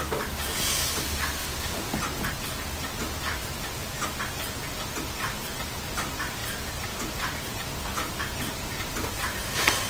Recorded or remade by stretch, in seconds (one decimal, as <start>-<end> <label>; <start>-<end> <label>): 0.0-9.9 recorded